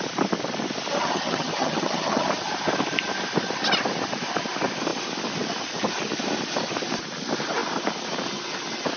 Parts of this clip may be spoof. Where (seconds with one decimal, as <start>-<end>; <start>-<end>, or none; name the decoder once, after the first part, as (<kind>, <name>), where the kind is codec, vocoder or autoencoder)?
1.0-2.3 (vocoder, HiFi-GAN)